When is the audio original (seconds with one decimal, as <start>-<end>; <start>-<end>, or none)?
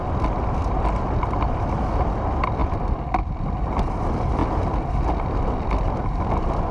0.0-6.7